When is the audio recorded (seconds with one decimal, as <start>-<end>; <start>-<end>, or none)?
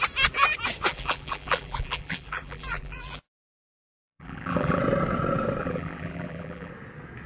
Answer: 0.0-0.9; 4.8-5.6; 6.7-7.3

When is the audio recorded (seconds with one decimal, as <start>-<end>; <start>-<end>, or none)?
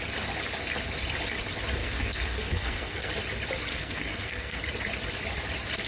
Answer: 0.0-1.8; 3.1-3.7; 4.6-5.9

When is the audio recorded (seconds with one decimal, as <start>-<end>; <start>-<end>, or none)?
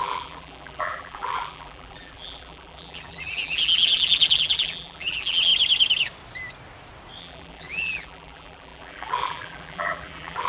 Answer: 5.5-7.2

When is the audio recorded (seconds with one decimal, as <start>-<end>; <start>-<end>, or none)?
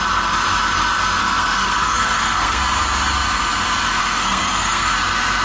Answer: 0.0-1.2; 2.6-4.0; 4.9-5.4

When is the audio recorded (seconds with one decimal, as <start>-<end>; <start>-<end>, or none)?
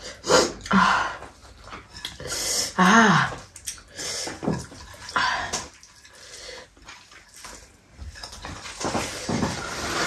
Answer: 0.0-8.2; 8.9-10.1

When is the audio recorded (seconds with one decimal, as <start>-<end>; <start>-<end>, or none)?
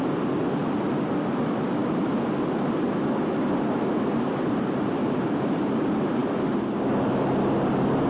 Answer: 0.0-1.8; 5.6-8.1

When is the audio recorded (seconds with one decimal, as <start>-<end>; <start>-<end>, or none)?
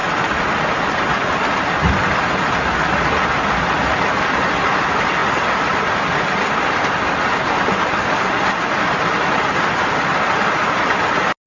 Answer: 1.6-11.5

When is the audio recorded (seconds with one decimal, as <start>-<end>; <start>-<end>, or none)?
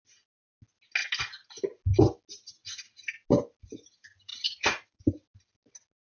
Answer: 0.0-4.3; 5.0-6.1